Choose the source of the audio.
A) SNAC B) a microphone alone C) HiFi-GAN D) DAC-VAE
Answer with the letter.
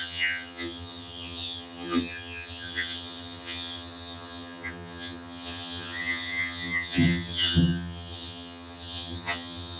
C